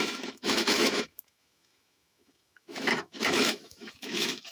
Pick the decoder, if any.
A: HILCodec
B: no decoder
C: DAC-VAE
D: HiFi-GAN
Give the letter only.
C